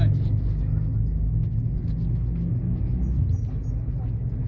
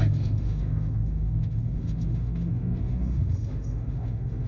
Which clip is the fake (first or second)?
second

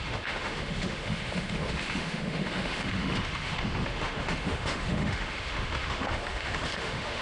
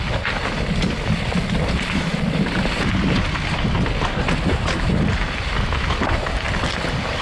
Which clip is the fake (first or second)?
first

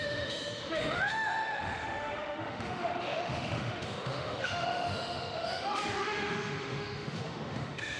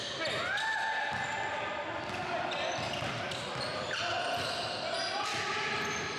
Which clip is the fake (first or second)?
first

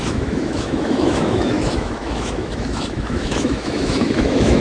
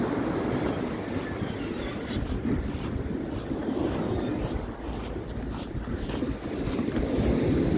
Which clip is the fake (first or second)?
first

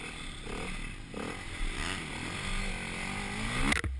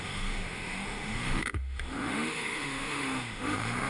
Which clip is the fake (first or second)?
second